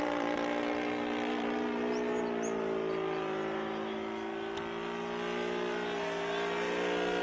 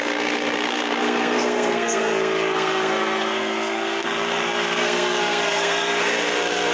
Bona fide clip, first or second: first